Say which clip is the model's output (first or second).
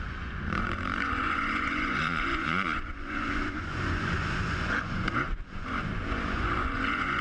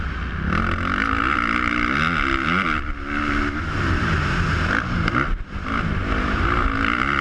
first